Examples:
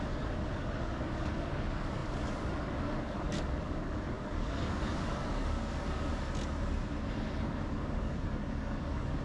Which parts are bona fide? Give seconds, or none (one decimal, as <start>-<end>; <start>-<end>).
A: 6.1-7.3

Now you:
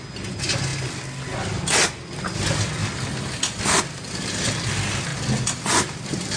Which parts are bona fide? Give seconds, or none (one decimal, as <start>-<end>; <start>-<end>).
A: 0.0-6.4

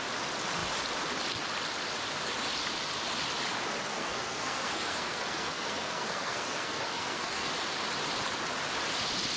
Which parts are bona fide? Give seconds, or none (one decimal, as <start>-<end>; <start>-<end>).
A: 0.0-3.9; 7.5-9.4

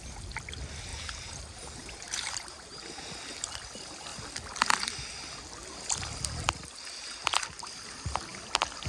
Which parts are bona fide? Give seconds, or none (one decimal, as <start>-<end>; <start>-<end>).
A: 0.0-0.9; 3.0-8.9

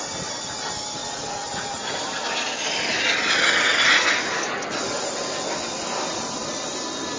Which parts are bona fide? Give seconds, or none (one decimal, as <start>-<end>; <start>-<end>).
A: 0.0-1.0; 2.0-7.2